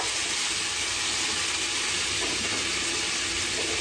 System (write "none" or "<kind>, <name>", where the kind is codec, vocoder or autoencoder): none